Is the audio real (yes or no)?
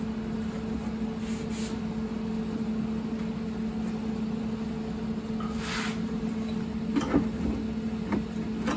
yes